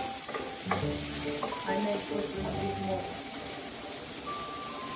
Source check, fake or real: real